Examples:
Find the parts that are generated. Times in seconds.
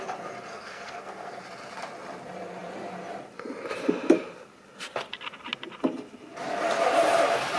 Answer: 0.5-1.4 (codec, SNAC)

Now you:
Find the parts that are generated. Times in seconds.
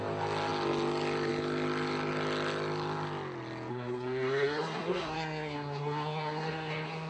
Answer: 3.7-7.1 (codec, SNAC)